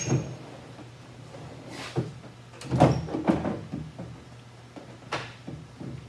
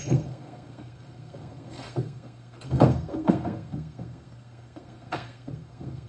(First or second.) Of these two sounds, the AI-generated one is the second